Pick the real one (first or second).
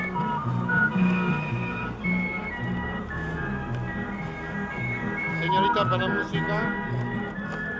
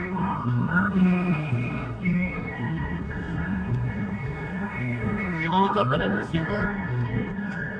first